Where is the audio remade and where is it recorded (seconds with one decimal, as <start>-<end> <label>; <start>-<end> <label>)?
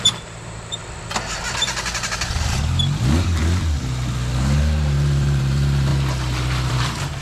0.0-0.8 remade; 0.8-4.6 recorded; 4.6-5.9 remade; 5.9-6.7 recorded; 6.7-7.2 remade